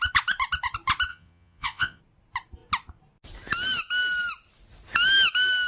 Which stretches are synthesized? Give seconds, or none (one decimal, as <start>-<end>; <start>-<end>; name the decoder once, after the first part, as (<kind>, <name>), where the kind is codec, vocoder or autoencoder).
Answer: 1.1-2.0 (vocoder, Vocos)